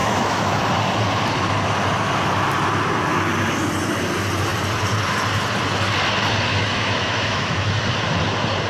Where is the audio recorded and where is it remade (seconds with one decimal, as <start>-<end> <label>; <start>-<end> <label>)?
0.0-0.6 remade; 0.6-6.5 recorded; 6.5-7.8 remade; 7.8-8.7 recorded